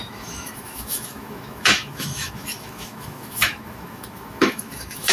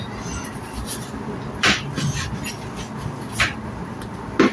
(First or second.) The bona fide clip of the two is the second